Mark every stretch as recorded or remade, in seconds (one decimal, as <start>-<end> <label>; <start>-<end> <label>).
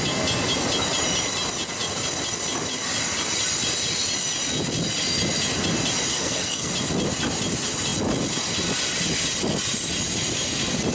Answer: 0.0-6.1 recorded; 6.1-6.7 remade; 6.7-10.9 recorded